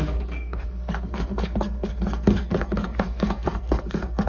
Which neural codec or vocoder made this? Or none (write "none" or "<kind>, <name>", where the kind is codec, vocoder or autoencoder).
codec, SNAC